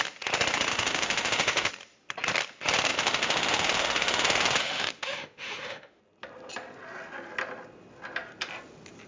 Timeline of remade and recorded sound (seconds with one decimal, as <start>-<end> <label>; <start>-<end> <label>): 0.0-0.7 recorded; 0.7-1.7 remade; 1.7-2.9 recorded; 2.9-6.0 remade; 6.0-9.1 recorded